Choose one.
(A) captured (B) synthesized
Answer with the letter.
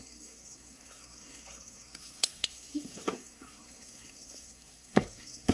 B